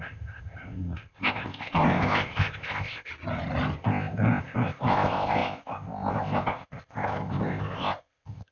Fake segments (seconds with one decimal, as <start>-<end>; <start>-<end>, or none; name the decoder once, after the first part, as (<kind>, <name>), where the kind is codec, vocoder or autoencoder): 0.0-3.1 (codec, ZipCodec); 3.8-8.5